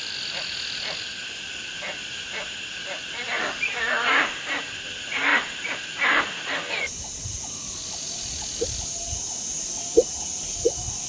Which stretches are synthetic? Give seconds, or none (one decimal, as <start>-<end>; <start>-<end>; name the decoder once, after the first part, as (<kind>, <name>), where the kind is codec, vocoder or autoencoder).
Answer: none